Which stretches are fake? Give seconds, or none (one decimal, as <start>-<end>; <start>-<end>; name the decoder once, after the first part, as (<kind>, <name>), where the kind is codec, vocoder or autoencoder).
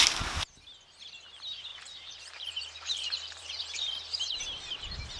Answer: 1.7-4.4 (vocoder, BigVGAN v2)